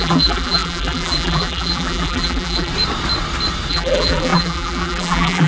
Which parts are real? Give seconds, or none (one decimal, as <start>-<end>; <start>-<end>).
2.7-3.7